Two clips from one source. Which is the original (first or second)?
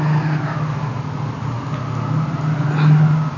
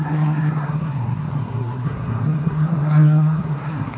first